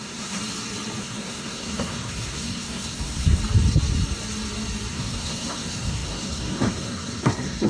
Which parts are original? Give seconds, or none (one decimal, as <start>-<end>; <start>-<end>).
0.4-1.0; 3.4-4.9